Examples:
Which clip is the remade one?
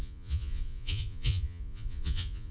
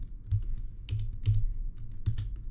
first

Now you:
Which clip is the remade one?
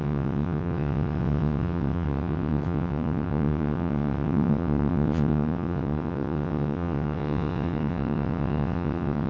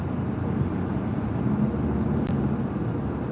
first